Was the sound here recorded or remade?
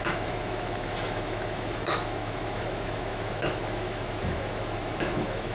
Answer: remade